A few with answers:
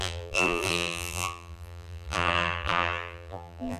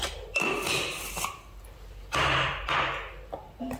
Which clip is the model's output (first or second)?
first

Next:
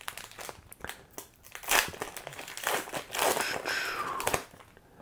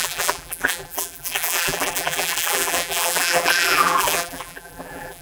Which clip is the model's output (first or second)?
second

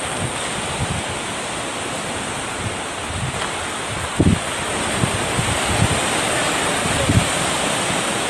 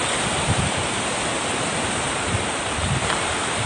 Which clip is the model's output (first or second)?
second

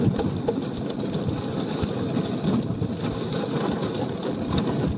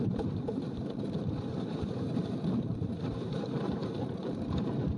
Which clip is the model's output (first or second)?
second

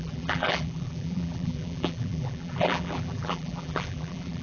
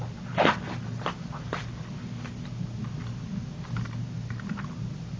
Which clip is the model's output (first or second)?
first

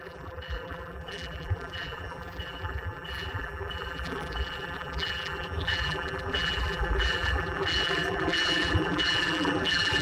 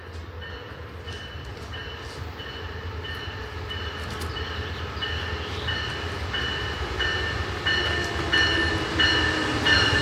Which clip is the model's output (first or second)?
first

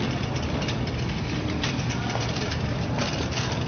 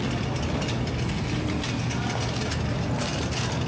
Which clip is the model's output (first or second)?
first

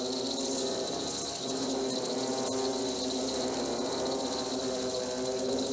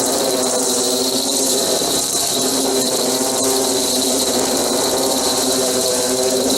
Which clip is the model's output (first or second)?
second